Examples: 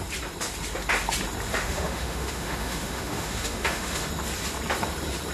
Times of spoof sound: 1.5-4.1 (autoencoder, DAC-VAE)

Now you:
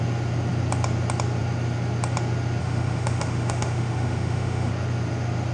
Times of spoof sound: 2.6-4.7 (autoencoder, DAC-VAE)

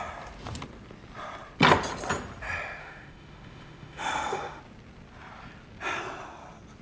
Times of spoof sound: 2.8-4.6 (autoencoder, DAC-VAE)

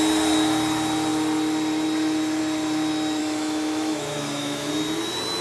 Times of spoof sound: 3.2-4.7 (autoencoder, DAC-VAE)

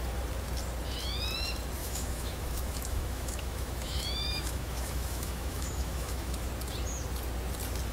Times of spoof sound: 1.8-6.5 (autoencoder, DAC-VAE)